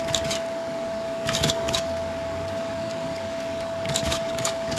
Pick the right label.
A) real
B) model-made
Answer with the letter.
B